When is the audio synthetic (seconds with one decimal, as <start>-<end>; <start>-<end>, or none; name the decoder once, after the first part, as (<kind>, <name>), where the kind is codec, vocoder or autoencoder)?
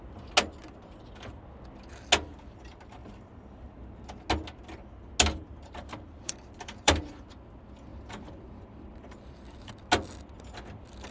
3.0-4.0 (vocoder, BigVGAN v2); 5.6-7.3; 7.9-9.7